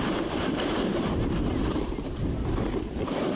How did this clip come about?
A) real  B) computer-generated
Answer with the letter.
B